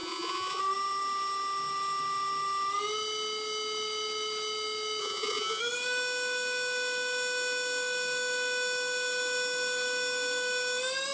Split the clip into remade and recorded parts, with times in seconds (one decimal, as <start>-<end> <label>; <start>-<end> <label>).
0.0-0.6 remade; 0.6-5.0 recorded; 5.0-5.6 remade; 5.6-11.1 recorded